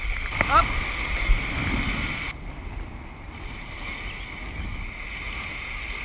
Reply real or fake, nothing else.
real